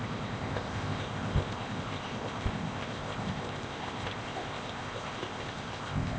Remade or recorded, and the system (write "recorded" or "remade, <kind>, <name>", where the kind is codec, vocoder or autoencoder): remade, codec, ZipCodec